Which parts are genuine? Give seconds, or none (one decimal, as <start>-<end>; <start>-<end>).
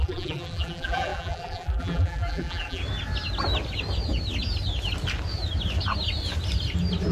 2.8-7.1